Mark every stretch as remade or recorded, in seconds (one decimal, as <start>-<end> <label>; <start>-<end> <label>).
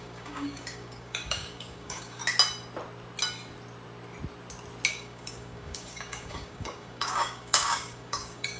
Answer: 0.0-2.2 remade; 2.2-4.9 recorded; 4.9-8.6 remade